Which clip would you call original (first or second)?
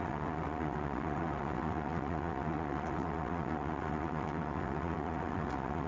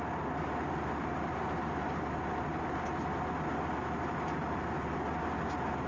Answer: second